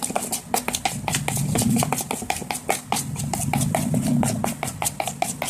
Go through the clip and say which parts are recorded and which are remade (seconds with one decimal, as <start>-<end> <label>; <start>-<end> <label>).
0.0-1.4 recorded; 1.4-4.7 remade; 4.7-5.5 recorded